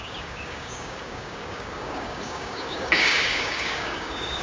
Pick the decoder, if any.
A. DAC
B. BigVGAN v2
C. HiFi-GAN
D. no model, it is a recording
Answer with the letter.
A